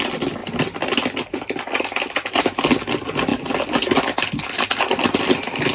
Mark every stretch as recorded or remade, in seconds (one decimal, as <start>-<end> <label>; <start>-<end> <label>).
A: 0.0-5.7 recorded